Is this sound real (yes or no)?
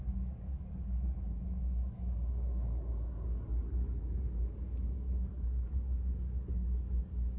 no